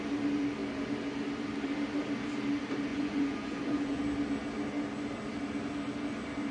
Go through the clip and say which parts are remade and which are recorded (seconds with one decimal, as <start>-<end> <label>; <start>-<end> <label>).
0.0-2.9 recorded; 2.9-4.0 remade; 4.0-6.5 recorded